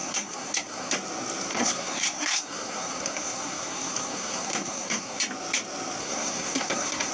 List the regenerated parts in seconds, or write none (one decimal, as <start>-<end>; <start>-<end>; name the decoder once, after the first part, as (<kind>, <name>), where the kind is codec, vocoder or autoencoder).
0.0-0.9 (codec, SNAC); 1.5-5.2; 6.0-7.1